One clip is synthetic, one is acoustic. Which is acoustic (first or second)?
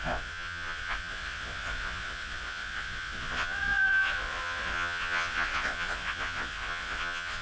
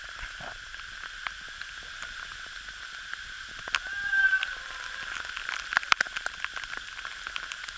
second